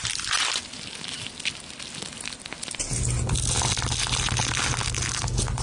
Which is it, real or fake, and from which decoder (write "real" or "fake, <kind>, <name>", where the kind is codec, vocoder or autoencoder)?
real